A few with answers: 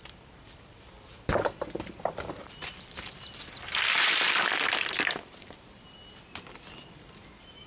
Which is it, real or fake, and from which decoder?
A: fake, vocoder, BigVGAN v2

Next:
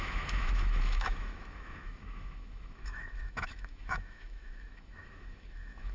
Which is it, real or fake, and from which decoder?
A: fake, autoencoder, DAC-VAE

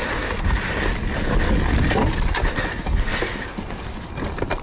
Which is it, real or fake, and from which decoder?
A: real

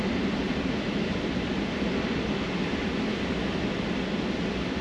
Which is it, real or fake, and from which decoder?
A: real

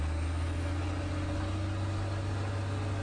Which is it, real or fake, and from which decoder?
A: real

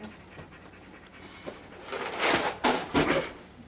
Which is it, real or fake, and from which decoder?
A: real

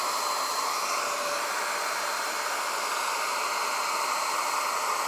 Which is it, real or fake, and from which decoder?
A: real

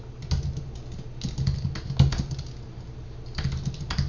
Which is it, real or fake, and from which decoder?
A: real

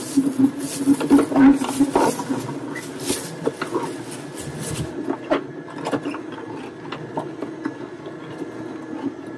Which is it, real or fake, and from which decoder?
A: real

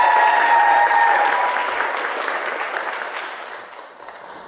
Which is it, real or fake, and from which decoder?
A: fake, vocoder, BigVGAN v2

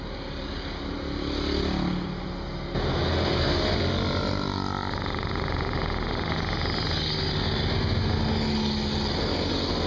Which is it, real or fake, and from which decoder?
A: real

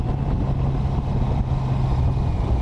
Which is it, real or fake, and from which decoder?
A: real